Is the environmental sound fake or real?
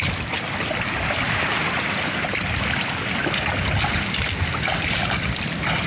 fake